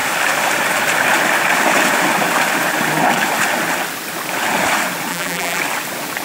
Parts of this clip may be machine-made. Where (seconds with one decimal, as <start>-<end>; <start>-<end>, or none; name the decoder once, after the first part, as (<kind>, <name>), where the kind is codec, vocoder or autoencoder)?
5.1-5.6 (vocoder, BigVGAN v2)

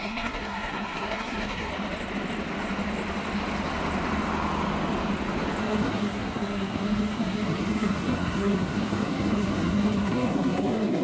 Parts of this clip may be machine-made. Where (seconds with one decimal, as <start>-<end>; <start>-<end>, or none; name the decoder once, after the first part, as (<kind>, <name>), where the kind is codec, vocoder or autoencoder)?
0.0-1.7 (codec, SNAC); 5.6-11.0

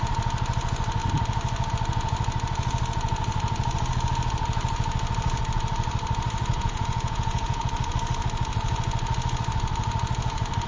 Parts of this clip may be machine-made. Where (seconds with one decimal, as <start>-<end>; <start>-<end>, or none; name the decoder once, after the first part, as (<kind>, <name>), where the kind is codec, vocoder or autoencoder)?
6.5-7.6 (vocoder, Vocos)